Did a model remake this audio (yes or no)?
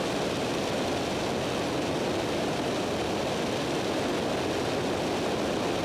no